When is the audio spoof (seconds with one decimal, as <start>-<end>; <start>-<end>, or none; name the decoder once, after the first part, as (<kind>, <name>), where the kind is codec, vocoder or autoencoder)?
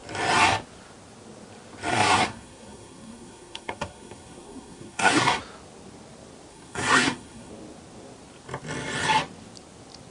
1.9-5.4 (codec, SNAC); 6.5-7.5